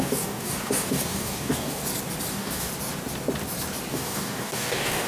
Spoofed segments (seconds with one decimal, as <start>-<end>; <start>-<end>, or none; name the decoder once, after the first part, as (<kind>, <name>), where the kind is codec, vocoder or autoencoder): 0.0-1.8 (codec, DAC); 2.3-2.7; 3.9-5.1